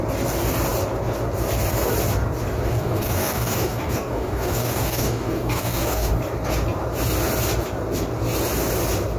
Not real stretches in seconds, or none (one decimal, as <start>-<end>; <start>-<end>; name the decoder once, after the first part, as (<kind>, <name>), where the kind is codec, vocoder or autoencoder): 2.7-6.1 (codec, DAC)